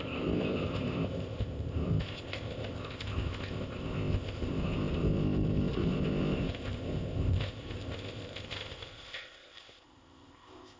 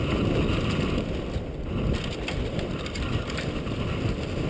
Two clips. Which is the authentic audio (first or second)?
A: second